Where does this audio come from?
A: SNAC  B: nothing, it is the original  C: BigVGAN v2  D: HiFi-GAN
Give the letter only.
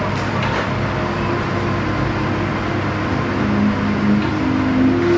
B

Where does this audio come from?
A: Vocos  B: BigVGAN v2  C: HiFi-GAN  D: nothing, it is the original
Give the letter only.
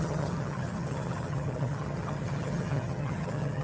C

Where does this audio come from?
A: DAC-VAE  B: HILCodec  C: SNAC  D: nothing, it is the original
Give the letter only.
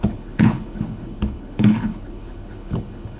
B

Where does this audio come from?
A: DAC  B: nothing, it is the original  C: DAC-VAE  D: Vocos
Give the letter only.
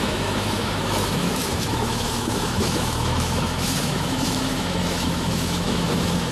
C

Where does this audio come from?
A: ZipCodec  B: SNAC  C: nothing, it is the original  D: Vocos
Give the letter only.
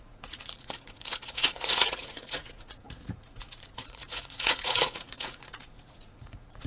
D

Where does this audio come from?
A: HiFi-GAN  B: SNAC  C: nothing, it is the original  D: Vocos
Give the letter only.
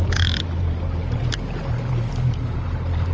C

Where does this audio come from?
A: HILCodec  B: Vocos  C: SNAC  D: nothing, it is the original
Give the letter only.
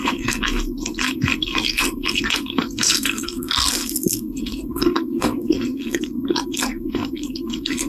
C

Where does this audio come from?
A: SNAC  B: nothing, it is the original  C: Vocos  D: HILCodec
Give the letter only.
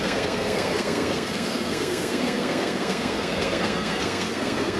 A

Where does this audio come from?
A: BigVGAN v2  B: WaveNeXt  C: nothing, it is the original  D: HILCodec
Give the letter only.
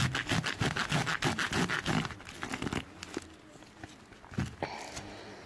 C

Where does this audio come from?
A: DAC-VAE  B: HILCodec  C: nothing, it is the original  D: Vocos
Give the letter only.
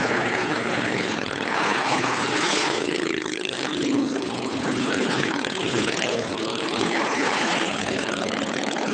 B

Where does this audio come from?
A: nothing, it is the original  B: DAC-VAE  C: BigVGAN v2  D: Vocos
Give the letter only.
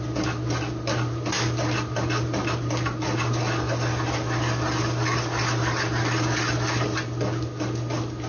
A